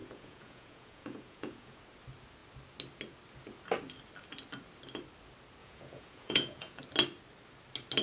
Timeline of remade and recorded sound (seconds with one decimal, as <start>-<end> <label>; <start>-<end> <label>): 0.0-1.8 remade; 1.8-5.6 recorded; 5.6-6.8 remade; 6.8-8.0 recorded